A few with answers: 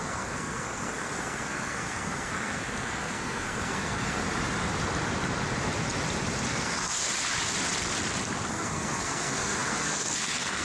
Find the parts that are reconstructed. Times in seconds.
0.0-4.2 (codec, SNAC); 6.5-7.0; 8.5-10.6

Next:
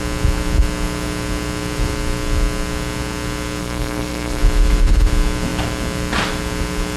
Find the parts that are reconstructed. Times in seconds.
3.6-4.4 (codec, SNAC)

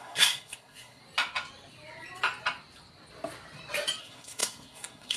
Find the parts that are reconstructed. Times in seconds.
0.0-1.0 (codec, SNAC); 4.0-5.2